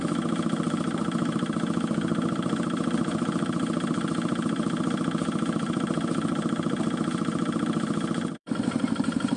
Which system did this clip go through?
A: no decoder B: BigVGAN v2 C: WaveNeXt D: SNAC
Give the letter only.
B